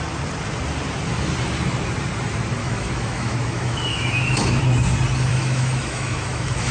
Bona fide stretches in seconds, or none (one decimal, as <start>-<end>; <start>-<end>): 0.0-2.6; 4.6-5.3